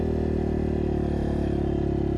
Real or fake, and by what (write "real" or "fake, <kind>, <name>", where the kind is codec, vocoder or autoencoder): real